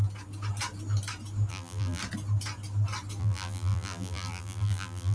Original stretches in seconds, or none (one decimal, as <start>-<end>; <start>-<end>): 0.0-1.5; 2.0-3.2